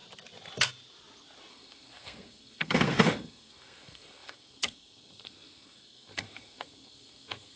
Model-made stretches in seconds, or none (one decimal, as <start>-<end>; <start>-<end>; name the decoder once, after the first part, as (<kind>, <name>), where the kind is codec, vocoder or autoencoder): 1.5-7.6 (codec, SNAC)